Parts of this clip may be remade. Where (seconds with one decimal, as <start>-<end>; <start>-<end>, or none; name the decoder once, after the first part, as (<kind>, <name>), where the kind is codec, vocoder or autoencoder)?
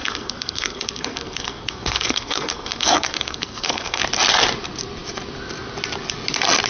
0.0-4.0 (codec, SNAC)